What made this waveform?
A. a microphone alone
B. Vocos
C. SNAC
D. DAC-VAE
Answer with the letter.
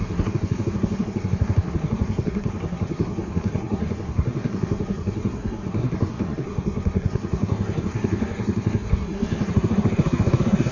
C